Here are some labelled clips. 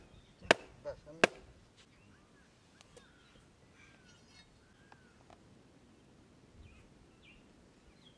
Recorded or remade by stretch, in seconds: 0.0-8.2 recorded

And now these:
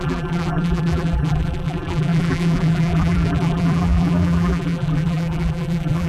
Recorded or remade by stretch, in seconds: 0.0-6.1 remade

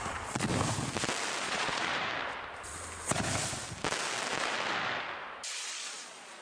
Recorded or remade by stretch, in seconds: 0.0-0.5 remade; 0.5-1.4 recorded; 1.4-1.9 remade; 1.9-5.7 recorded; 5.7-6.4 remade

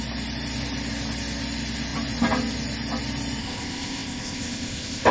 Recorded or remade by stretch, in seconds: 0.0-3.4 recorded; 3.4-5.1 remade

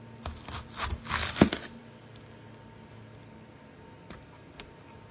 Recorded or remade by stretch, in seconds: 0.0-5.1 recorded